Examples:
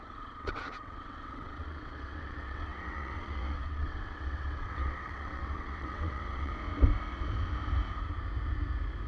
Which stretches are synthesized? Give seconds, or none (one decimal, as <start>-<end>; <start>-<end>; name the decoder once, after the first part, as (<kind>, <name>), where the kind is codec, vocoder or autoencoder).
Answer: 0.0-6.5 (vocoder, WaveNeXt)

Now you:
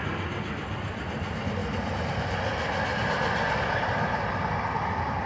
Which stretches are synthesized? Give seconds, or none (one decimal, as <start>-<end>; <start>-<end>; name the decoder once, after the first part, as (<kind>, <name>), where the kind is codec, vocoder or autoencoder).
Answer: none

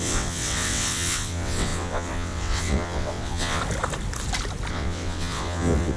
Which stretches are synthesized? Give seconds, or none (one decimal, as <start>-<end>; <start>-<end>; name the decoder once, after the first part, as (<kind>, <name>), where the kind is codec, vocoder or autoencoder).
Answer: 0.0-3.6 (vocoder, WaveNeXt); 4.7-6.0